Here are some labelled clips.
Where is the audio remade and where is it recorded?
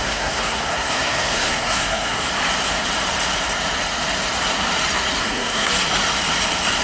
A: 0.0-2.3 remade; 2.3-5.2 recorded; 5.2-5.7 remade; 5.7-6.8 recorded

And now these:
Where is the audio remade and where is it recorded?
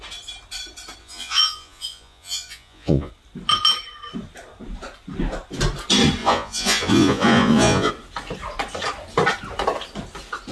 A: 0.0-1.0 recorded; 1.0-3.1 remade; 3.1-6.2 recorded; 6.2-7.9 remade; 7.9-10.5 recorded